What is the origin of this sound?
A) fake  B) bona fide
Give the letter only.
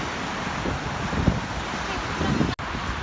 B